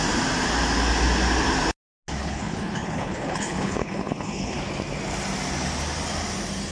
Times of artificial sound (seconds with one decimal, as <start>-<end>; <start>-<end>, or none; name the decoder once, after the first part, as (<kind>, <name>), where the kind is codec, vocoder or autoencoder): 2.2-4.6 (codec, HILCodec)